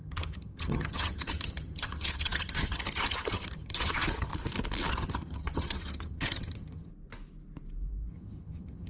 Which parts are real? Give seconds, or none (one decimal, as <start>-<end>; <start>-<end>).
4.3-4.9; 6.9-8.1